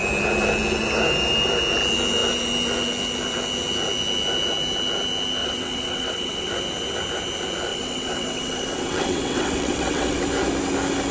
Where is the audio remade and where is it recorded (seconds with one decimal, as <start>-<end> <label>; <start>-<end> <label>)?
0.0-5.4 recorded; 5.4-6.5 remade; 6.5-7.7 recorded; 7.7-10.2 remade; 10.2-11.1 recorded